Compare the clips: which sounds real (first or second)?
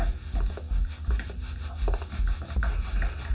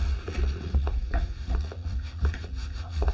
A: first